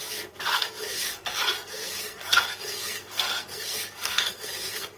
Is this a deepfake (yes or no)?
yes